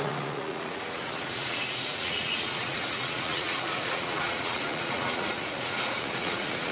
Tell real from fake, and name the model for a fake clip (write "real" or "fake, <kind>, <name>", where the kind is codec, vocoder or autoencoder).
fake, vocoder, Vocos